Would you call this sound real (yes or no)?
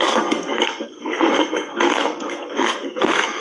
no